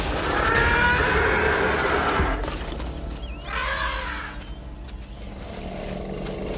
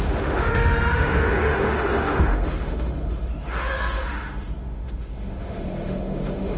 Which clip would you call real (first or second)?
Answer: first